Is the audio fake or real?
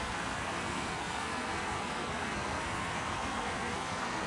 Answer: fake